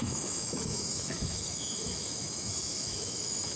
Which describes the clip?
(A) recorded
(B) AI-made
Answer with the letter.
B